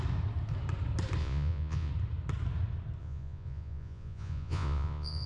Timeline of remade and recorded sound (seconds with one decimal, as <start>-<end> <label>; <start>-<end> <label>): 0.0-1.2 recorded; 1.2-1.9 remade; 1.9-3.0 recorded; 3.0-5.3 remade

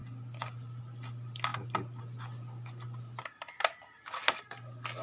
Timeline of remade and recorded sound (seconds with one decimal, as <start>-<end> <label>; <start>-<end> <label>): 0.0-5.0 recorded

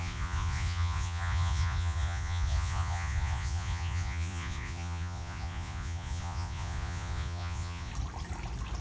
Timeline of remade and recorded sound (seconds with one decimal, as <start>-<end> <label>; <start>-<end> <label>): 0.0-7.9 remade; 7.9-8.8 recorded

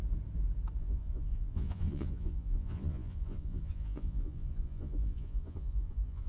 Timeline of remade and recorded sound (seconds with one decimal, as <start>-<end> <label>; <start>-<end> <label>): 0.0-0.8 recorded; 0.8-6.3 remade

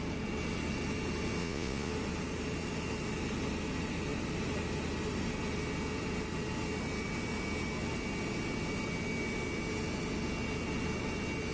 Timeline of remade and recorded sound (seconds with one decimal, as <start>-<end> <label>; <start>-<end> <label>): 0.0-1.4 recorded; 1.4-1.9 remade; 1.9-11.5 recorded

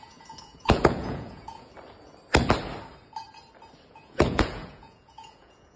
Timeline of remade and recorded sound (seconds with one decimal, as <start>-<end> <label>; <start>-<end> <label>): 0.0-1.7 remade; 1.7-3.9 recorded; 3.9-5.8 remade

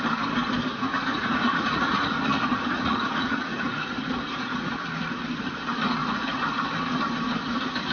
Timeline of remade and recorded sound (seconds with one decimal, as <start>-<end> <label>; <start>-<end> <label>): 0.0-0.7 recorded; 0.7-4.8 remade; 4.8-6.0 recorded; 6.0-6.6 remade; 6.6-7.9 recorded